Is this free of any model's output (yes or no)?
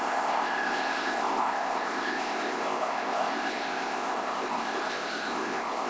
no